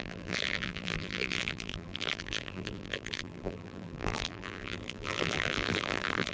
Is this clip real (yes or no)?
no